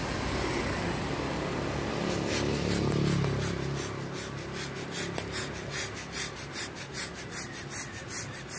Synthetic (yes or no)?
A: no